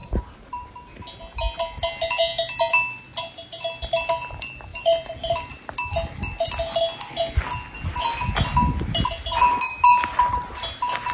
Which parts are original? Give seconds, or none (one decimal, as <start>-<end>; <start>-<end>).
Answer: 0.7-4.7; 5.5-11.1

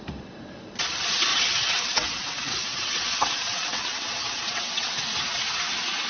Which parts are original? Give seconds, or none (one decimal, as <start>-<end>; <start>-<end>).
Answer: 0.0-1.3; 5.0-6.1

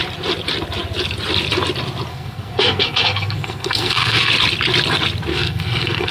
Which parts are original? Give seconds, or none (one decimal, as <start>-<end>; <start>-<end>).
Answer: 0.0-2.1; 4.3-5.3